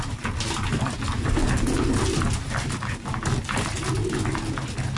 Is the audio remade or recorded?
recorded